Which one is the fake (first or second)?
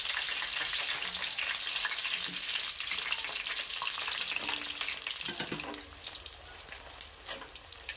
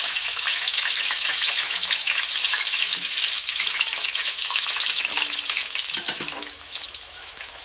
second